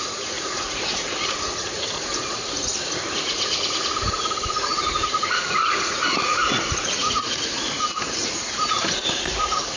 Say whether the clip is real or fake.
fake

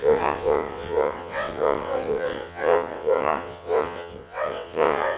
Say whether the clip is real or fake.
fake